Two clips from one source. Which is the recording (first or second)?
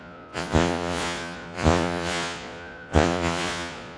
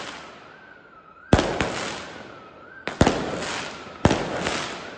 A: second